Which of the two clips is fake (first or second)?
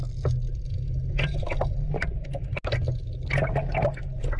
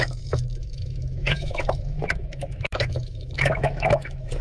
second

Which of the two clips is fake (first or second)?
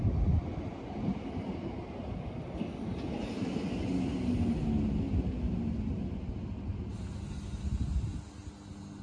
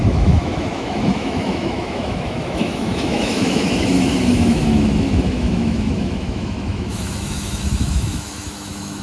second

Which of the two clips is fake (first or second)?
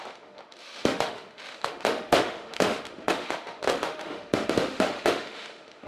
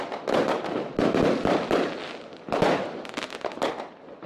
first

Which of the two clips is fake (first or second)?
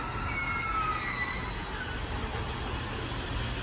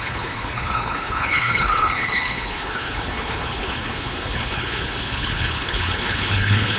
second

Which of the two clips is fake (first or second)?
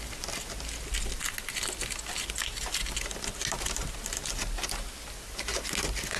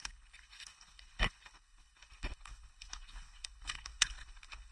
second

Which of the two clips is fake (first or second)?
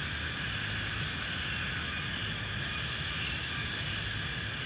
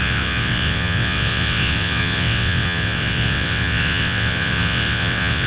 second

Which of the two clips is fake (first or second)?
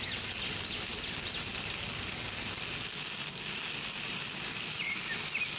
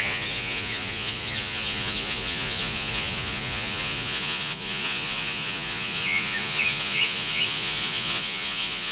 second